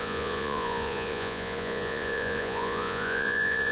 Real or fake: fake